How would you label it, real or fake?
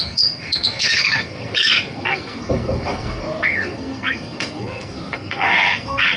fake